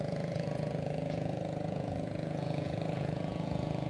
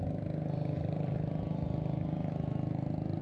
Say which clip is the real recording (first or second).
second